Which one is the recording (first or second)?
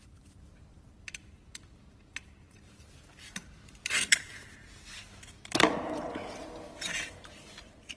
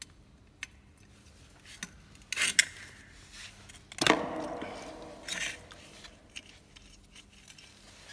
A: second